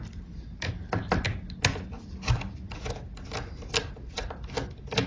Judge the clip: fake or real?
real